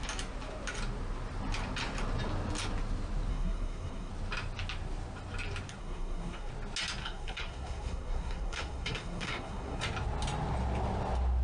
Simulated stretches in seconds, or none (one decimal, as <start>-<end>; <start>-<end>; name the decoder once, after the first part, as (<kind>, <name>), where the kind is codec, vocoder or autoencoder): 3.3-4.1 (codec, SNAC); 5.8-6.5; 7.0-9.8